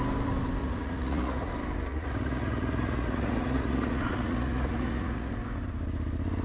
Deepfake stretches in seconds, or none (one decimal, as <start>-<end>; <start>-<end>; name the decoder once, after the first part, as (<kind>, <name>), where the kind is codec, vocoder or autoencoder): 0.6-1.5 (vocoder, Vocos); 1.9-5.3

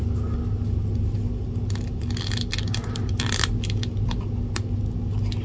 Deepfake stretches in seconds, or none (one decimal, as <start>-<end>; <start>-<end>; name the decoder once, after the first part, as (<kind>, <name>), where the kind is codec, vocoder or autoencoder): 2.8-3.5 (vocoder, BigVGAN v2)

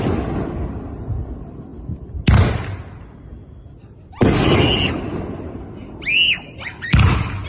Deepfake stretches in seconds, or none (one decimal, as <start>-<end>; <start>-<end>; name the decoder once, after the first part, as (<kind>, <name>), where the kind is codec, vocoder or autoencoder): none

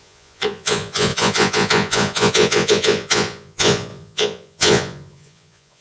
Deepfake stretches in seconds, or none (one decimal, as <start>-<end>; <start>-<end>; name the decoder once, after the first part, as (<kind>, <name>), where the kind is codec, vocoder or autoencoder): 0.0-5.8 (vocoder, Vocos)

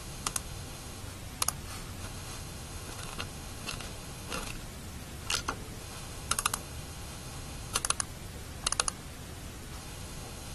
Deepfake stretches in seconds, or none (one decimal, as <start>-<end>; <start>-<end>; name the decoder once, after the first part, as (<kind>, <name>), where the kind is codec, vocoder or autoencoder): 0.0-1.0 (autoencoder, DAC-VAE); 2.0-4.5; 5.8-7.8; 9.8-10.5

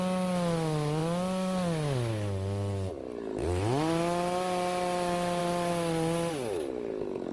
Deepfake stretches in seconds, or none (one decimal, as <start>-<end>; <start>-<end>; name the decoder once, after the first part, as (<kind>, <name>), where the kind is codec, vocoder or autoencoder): none

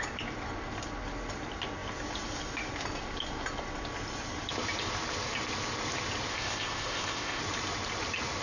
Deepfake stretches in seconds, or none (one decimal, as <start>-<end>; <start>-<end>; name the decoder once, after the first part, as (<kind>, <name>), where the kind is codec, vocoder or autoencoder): 6.3-7.4 (codec, ZipCodec)